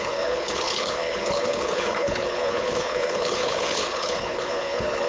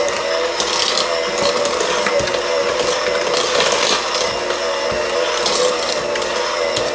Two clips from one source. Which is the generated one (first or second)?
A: first